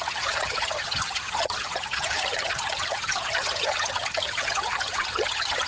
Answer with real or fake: fake